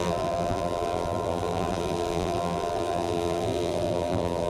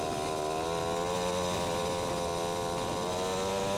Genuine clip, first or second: second